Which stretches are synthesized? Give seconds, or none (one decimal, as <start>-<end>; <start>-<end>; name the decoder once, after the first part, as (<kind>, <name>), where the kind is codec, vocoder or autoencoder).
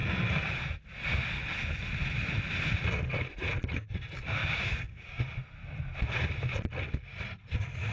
4.4-5.2 (codec, DAC)